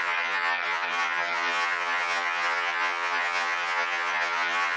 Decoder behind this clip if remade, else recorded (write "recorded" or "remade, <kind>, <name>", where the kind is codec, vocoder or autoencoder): remade, vocoder, HiFi-GAN